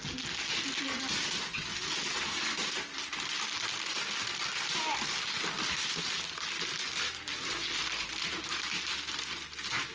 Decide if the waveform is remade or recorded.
recorded